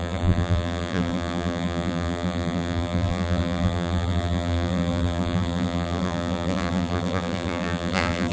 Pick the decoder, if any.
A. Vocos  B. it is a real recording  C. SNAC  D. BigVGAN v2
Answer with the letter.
D